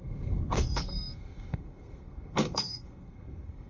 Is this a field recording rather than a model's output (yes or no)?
no